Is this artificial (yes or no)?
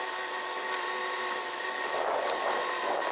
no